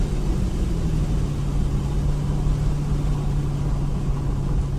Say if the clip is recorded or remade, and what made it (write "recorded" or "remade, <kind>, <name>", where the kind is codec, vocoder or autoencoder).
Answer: recorded